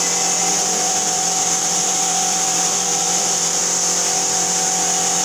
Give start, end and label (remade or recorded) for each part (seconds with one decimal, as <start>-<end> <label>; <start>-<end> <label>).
0.0-0.5 recorded; 0.5-3.6 remade; 3.6-5.2 recorded

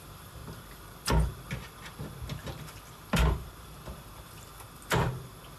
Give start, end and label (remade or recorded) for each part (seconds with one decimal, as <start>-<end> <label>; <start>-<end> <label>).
0.0-0.4 remade; 0.4-3.1 recorded; 3.1-4.5 remade; 4.5-5.6 recorded